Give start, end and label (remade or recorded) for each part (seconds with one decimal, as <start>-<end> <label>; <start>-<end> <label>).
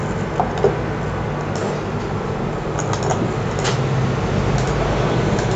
0.0-5.6 recorded